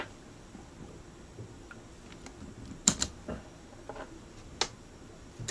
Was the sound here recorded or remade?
recorded